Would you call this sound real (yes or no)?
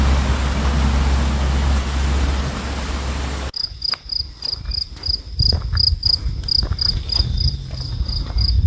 yes